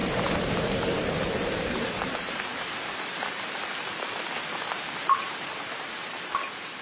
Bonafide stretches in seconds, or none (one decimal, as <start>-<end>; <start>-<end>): none

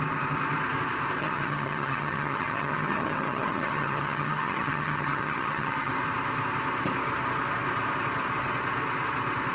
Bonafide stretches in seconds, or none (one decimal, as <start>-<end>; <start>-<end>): 0.0-1.2; 5.9-9.5

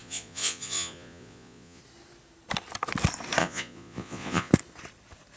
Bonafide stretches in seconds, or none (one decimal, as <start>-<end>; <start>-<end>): 1.8-3.4; 4.5-5.4

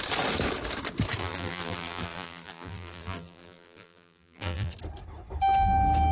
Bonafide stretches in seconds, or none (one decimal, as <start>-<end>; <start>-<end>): 0.0-1.2; 4.7-6.1

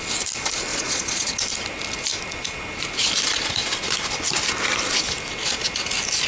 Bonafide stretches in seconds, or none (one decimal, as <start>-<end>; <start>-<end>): 0.0-0.7; 1.3-6.3

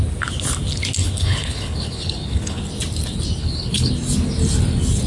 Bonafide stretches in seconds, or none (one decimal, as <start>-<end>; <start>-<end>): 0.0-1.0; 2.6-3.4; 3.9-5.1

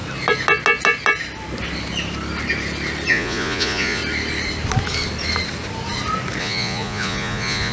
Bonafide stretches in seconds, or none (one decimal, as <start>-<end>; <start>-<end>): 0.0-3.1; 4.0-6.4